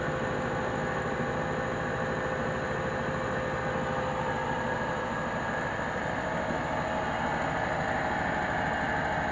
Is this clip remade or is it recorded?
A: recorded